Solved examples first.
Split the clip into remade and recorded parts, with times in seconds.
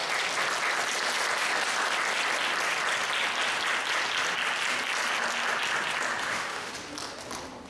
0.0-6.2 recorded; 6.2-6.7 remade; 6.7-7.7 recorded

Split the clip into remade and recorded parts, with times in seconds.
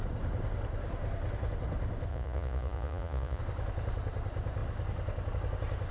0.0-2.1 recorded; 2.1-3.4 remade; 3.4-5.9 recorded